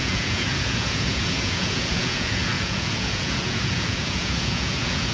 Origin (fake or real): fake